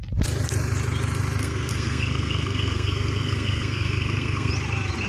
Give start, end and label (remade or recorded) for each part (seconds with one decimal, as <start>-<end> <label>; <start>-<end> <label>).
0.0-1.4 recorded; 1.4-4.5 remade; 4.5-5.1 recorded